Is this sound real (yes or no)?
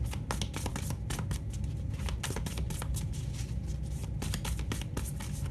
yes